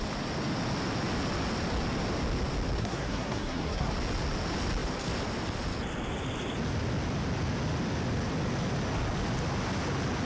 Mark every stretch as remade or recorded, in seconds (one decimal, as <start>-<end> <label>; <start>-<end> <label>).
0.0-2.8 recorded; 2.8-3.9 remade; 3.9-10.3 recorded

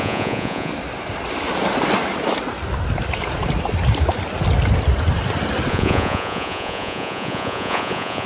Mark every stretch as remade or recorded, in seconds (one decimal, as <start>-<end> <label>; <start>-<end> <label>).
0.0-0.7 remade; 0.7-5.7 recorded; 5.7-8.3 remade

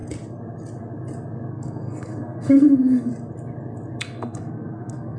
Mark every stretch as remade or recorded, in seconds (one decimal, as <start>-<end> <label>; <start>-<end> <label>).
0.0-1.5 recorded; 1.5-3.1 remade; 3.1-4.0 recorded; 4.0-5.2 remade

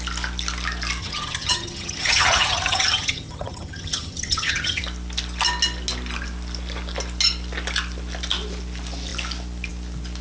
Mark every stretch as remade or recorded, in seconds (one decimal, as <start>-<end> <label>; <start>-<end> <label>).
0.0-1.0 recorded; 1.0-4.8 remade; 4.8-10.2 recorded

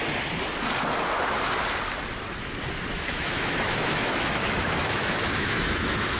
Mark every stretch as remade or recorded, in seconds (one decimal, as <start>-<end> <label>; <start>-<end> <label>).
0.0-2.9 recorded; 2.9-6.2 remade

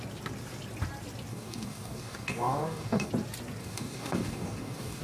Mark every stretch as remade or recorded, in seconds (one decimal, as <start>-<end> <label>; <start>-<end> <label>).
0.0-1.3 recorded; 1.3-3.1 remade; 3.1-3.6 recorded; 3.6-5.0 remade

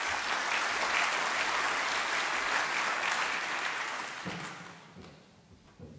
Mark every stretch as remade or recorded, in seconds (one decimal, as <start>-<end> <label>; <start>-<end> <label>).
0.0-6.0 recorded

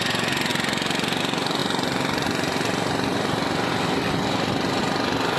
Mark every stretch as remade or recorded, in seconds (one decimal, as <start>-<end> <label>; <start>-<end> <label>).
0.0-5.4 recorded